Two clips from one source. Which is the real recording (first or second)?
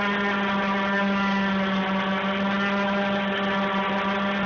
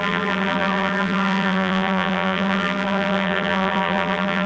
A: first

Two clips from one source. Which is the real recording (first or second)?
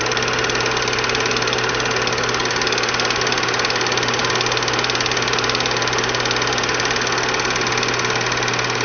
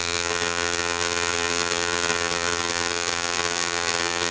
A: first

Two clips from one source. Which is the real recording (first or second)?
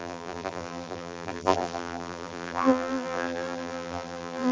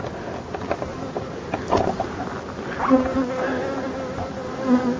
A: second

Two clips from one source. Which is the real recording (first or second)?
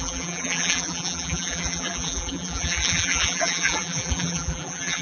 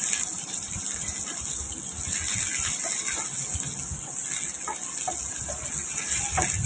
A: second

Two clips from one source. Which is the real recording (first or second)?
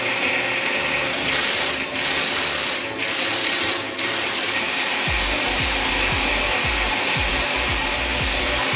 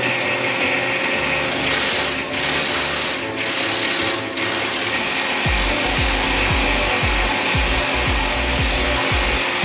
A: second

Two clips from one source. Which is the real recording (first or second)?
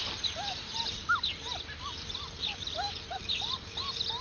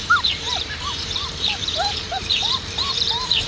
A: first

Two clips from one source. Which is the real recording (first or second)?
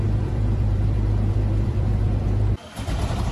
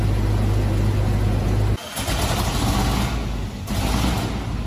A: second